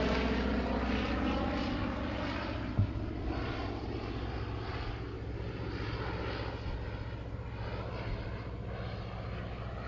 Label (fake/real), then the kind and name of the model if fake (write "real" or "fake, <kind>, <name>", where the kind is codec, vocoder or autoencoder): real